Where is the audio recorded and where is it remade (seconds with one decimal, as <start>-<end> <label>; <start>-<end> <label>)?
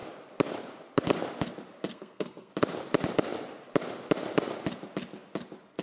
0.0-1.9 recorded; 1.9-2.5 remade; 2.5-5.8 recorded